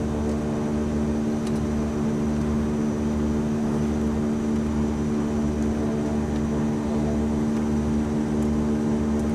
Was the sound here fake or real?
real